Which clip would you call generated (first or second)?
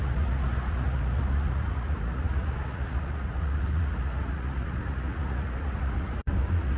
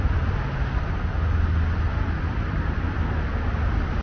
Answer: first